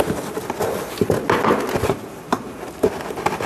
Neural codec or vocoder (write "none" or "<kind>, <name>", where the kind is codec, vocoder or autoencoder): none